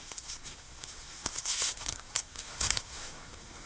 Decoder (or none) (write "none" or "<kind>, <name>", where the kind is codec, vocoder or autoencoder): codec, SNAC